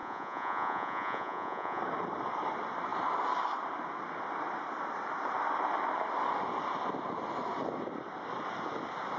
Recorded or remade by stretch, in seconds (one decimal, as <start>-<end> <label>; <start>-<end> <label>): 0.0-1.8 remade; 1.8-9.2 recorded